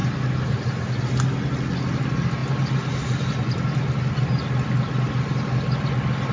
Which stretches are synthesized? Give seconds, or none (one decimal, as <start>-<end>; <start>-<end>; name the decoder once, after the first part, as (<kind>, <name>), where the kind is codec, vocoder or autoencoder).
none